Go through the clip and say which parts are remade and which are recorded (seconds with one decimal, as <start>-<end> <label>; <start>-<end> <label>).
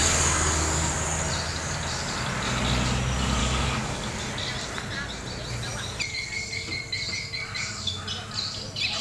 0.0-0.9 remade; 0.9-3.4 recorded; 3.4-4.1 remade; 4.1-9.0 recorded